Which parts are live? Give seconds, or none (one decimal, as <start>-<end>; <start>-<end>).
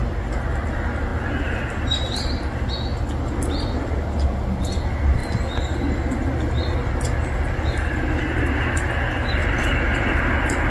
0.0-9.4; 10.1-10.7